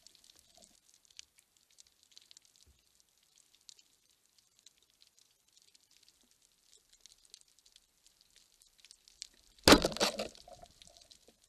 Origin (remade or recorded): recorded